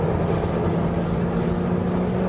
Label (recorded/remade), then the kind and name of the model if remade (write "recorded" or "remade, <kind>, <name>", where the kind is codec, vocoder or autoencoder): recorded